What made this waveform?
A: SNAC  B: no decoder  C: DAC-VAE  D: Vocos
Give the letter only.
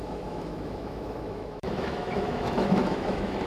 C